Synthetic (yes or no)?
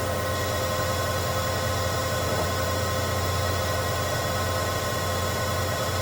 yes